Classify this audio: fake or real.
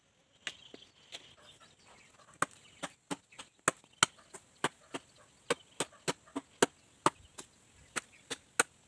real